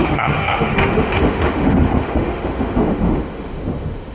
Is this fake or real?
fake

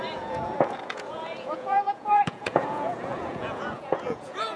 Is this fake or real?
fake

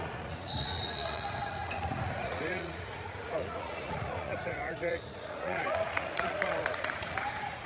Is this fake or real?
fake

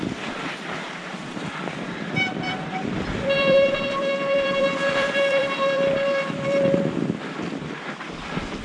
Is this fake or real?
fake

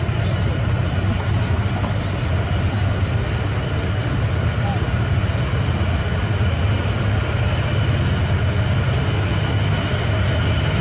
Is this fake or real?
real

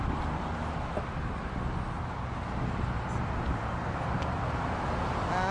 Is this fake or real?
real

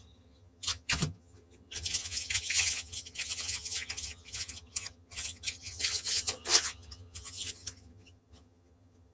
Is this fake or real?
fake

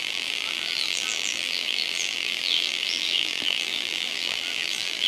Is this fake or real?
fake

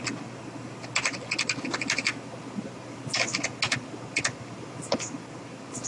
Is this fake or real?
real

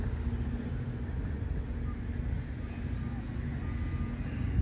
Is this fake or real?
real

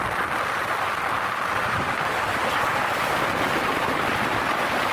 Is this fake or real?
real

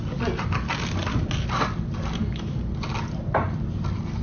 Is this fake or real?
real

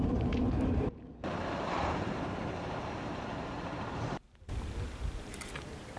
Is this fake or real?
fake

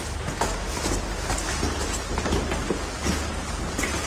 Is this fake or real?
real